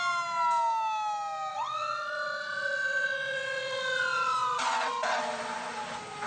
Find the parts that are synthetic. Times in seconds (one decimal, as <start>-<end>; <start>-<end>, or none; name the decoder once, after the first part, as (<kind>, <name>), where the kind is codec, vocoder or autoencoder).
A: 1.5-5.2 (vocoder, WaveNeXt)